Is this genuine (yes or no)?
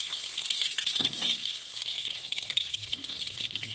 no